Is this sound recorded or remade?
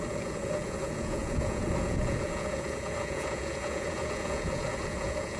remade